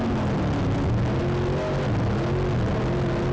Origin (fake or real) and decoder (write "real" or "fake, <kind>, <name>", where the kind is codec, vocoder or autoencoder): real